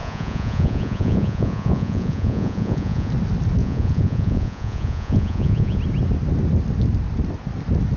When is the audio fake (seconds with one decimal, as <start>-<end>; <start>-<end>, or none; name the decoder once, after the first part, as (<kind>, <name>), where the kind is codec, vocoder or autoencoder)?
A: 0.0-3.1 (vocoder, Vocos); 3.6-5.8

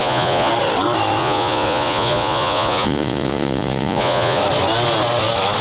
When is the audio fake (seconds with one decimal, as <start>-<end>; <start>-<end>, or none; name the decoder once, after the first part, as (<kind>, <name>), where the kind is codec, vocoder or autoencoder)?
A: 0.0-0.5 (vocoder, Vocos); 1.2-4.4

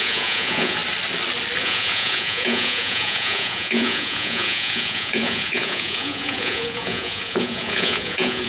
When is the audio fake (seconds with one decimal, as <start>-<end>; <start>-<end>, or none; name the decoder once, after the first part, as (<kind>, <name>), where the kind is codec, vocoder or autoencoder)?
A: 0.0-0.8 (vocoder, Vocos); 1.6-8.5